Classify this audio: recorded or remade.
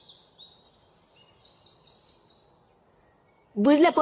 recorded